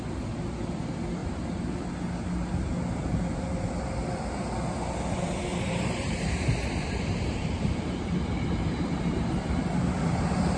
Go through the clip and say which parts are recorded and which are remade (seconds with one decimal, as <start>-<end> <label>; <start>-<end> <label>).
0.0-1.2 recorded; 1.2-1.9 remade; 1.9-5.5 recorded; 5.5-7.7 remade; 7.7-10.6 recorded

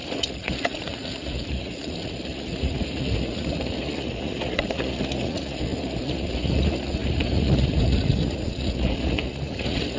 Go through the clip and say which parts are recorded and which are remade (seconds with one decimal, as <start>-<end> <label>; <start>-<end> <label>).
0.0-10.0 remade

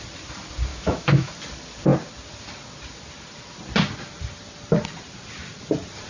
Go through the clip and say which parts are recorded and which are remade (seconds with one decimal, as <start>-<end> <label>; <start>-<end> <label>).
0.0-0.7 recorded; 0.7-1.3 remade; 1.3-6.1 recorded

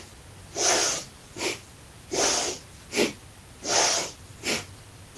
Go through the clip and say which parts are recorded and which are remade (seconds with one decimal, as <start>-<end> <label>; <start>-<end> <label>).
0.0-5.2 recorded